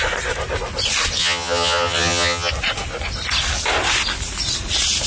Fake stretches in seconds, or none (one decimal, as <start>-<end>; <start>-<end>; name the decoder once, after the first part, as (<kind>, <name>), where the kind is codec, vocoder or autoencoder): 1.2-2.5 (vocoder, HiFi-GAN)